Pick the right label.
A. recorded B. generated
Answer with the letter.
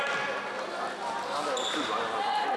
A